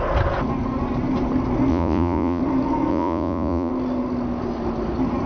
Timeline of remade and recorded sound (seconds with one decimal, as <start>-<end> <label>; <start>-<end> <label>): 0.0-1.7 recorded; 1.7-2.4 remade; 2.4-2.9 recorded; 2.9-3.7 remade; 3.7-5.3 recorded